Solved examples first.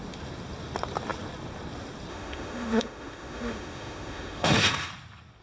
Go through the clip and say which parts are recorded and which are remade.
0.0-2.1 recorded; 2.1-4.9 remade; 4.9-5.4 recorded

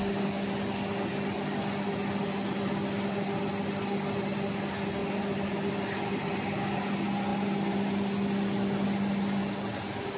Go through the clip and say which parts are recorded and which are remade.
0.0-10.2 recorded

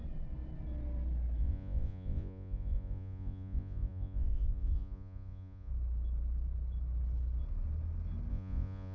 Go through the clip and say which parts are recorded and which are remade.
0.0-1.4 recorded; 1.4-5.7 remade; 5.7-8.3 recorded; 8.3-8.9 remade

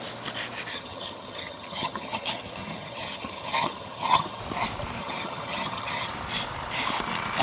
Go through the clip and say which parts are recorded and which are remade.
0.0-0.7 recorded; 0.7-4.4 remade; 4.4-5.0 recorded; 5.0-6.1 remade; 6.1-7.4 recorded

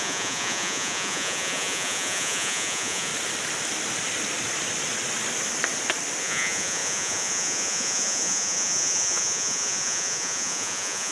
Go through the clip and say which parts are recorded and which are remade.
0.0-3.1 remade; 3.1-6.2 recorded; 6.2-11.1 remade